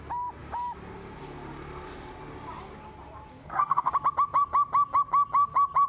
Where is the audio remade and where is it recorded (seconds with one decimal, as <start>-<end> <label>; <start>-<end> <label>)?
0.0-3.4 recorded; 3.4-3.9 remade; 3.9-5.9 recorded